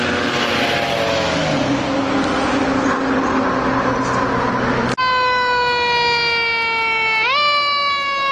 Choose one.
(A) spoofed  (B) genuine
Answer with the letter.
B